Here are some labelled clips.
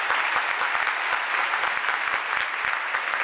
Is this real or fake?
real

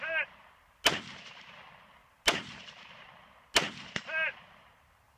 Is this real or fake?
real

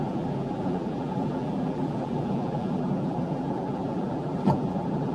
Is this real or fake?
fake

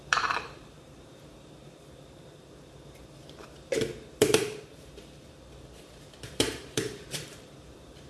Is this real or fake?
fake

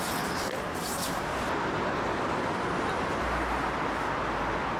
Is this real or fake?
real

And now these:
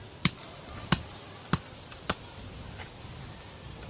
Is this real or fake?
real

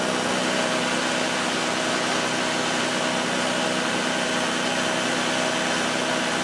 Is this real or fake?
real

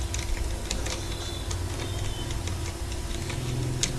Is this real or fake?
real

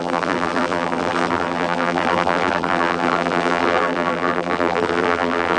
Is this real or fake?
fake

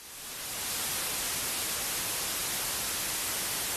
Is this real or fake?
real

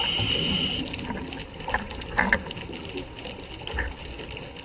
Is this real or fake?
real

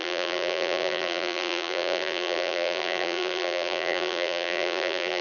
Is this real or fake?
fake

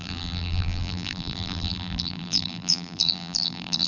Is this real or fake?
fake